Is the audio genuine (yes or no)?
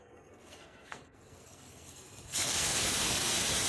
no